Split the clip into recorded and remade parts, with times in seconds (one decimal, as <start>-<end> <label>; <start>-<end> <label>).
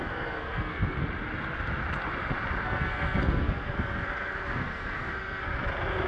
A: 0.0-1.0 remade; 1.0-2.6 recorded; 2.6-5.5 remade; 5.5-6.1 recorded